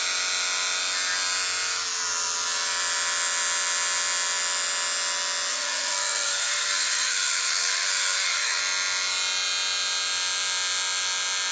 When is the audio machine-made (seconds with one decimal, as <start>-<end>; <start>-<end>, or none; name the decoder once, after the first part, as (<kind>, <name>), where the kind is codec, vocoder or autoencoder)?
5.5-8.6 (codec, SNAC)